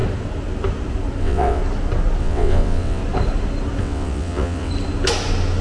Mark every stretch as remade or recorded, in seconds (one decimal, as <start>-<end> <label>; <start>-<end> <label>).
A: 0.0-1.2 recorded; 1.2-1.6 remade; 1.6-2.2 recorded; 2.2-3.0 remade; 3.0-3.8 recorded; 3.8-4.7 remade; 4.7-5.6 recorded